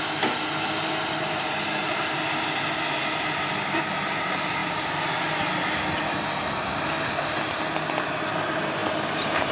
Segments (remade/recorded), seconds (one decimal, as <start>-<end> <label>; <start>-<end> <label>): 0.0-9.5 recorded